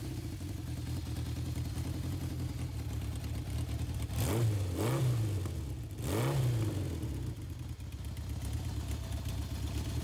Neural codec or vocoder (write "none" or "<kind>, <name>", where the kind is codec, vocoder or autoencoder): none